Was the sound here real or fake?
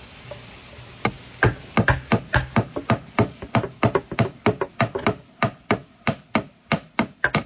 real